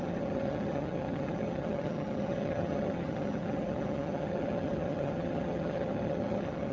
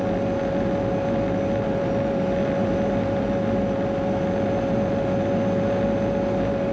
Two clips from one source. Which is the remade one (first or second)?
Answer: first